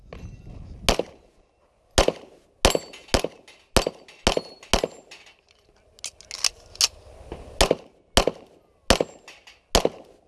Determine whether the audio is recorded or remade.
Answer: recorded